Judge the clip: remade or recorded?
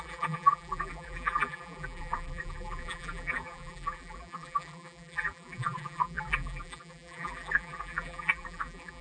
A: remade